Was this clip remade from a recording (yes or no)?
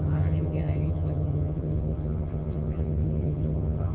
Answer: yes